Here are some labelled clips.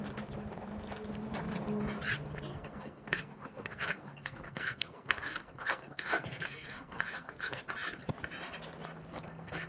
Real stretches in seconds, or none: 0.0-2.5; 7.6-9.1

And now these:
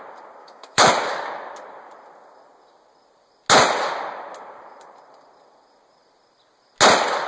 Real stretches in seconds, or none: 0.0-0.4; 0.9-7.3

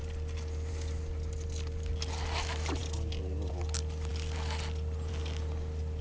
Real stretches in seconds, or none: 0.0-6.0

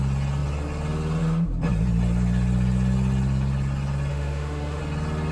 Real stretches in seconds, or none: 0.0-4.1; 4.8-5.3

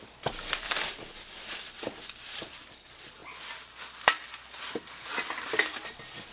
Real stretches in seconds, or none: 3.2-4.6

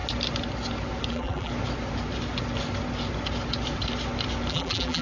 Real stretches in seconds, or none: 0.0-1.1; 1.5-4.5